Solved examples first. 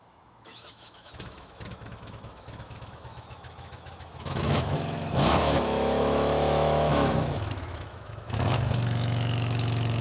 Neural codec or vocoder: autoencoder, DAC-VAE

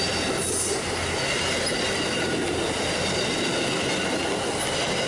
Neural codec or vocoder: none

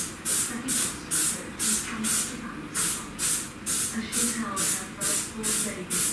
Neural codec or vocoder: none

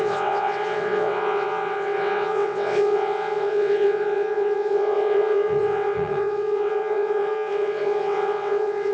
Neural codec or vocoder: vocoder, WaveNeXt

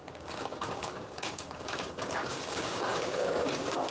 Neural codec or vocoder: codec, DAC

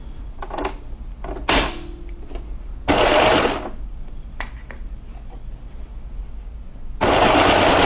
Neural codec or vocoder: none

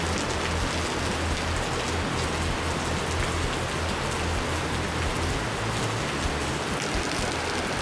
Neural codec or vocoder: none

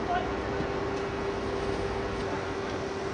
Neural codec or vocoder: none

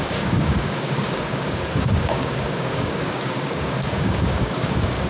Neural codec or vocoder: codec, DAC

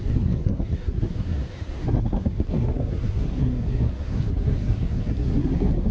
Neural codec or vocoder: codec, SNAC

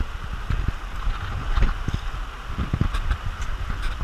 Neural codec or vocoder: none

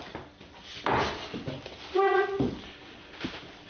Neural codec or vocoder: none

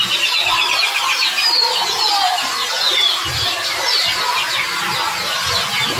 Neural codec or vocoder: none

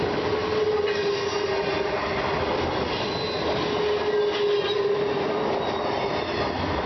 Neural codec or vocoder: none